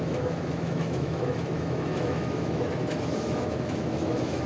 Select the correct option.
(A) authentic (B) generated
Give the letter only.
B